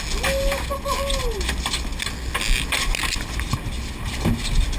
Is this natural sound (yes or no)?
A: yes